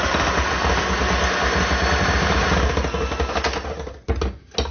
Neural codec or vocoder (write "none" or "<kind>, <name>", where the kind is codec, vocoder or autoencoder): none